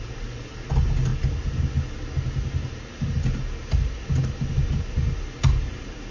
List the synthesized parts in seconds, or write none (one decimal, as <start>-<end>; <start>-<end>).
none